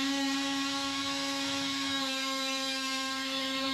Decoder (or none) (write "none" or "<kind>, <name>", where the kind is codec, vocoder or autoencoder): autoencoder, DAC-VAE